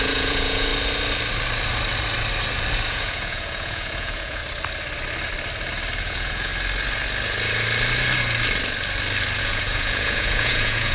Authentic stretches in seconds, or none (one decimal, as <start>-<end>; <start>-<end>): 0.7-2.9; 4.4-6.0; 6.5-9.4